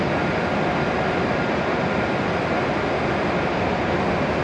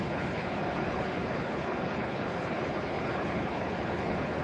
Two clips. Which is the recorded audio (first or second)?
first